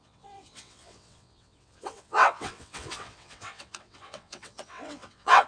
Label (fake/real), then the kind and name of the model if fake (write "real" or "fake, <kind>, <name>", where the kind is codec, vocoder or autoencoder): fake, vocoder, WaveNeXt